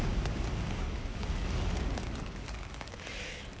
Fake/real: fake